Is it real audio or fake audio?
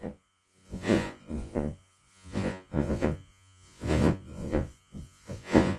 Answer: fake